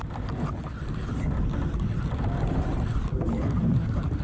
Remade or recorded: recorded